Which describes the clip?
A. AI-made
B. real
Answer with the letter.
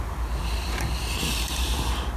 B